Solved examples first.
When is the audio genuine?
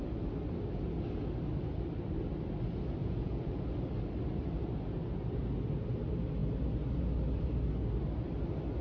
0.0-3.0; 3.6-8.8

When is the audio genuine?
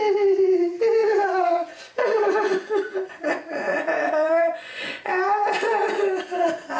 0.0-1.0; 5.1-6.8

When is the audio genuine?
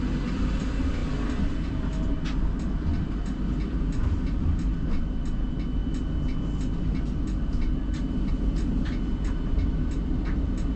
0.0-10.8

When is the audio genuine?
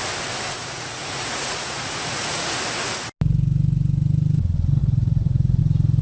0.0-0.6; 2.6-4.8; 5.6-6.0